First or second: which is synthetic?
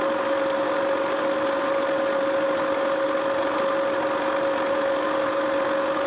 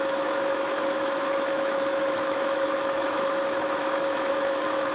second